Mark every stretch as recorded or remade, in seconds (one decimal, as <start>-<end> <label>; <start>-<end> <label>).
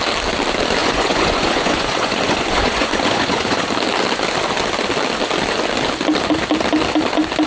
0.0-0.8 recorded; 0.8-3.7 remade; 3.7-7.5 recorded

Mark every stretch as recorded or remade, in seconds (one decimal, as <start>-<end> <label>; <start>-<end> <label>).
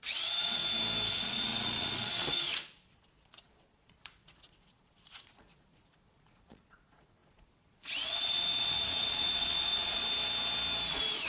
0.0-0.6 remade; 0.6-1.1 recorded; 1.1-10.0 remade; 10.0-10.9 recorded; 10.9-11.3 remade